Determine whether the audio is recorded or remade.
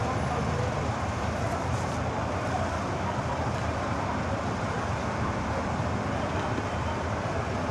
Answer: remade